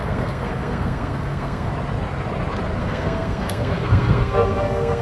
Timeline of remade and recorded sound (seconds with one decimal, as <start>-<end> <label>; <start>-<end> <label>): 0.0-1.7 remade; 1.7-2.8 recorded; 2.8-5.0 remade